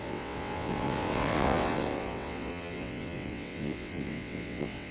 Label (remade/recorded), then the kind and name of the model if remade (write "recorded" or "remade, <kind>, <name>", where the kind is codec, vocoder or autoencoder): remade, vocoder, WaveNeXt